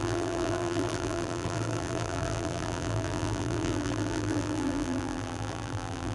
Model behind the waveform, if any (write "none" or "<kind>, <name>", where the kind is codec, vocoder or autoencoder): vocoder, BigVGAN v2